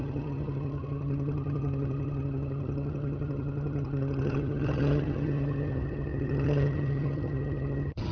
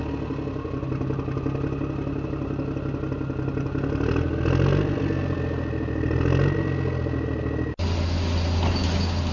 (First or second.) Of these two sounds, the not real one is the first